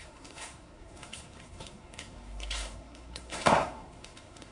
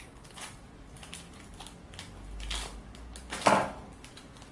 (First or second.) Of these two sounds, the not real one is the first